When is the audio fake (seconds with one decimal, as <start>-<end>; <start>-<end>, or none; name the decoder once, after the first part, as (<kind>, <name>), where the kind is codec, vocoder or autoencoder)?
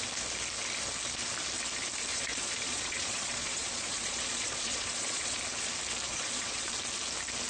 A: 2.1-5.4 (vocoder, Vocos); 6.1-6.7